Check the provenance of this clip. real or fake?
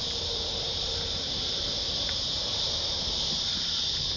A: fake